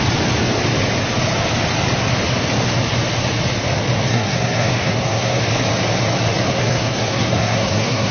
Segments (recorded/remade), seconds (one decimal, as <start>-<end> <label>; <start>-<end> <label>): 0.0-4.1 recorded; 4.1-5.4 remade; 5.4-6.5 recorded; 6.5-8.1 remade